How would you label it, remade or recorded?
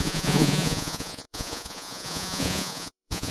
remade